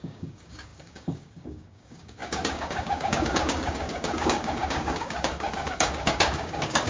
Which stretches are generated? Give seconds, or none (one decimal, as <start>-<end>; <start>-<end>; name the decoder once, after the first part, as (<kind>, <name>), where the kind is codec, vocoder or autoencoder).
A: 0.0-6.9 (codec, DAC)